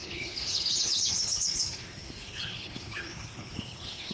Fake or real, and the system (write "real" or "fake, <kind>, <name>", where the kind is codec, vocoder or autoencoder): fake, codec, HILCodec